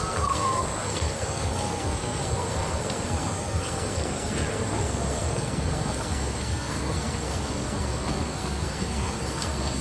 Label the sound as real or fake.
fake